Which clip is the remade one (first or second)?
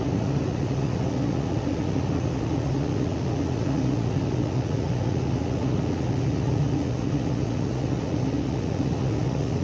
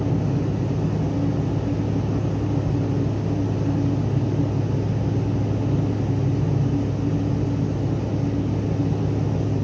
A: first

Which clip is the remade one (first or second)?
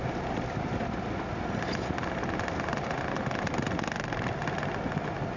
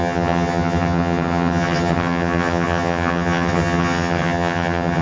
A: second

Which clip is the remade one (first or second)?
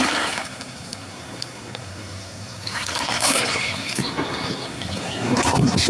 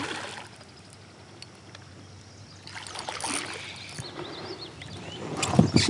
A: first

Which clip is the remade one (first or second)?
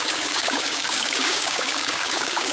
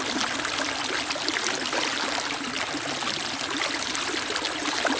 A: first